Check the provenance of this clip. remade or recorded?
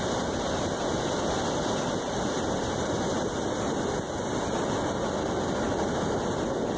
recorded